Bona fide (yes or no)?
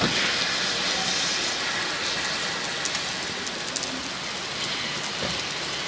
yes